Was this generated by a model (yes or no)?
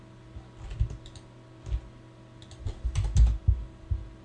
no